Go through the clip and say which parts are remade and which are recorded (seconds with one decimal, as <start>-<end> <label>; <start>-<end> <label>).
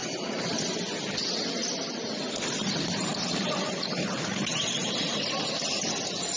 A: 0.0-0.5 remade; 0.5-1.6 recorded; 1.6-5.4 remade; 5.4-6.4 recorded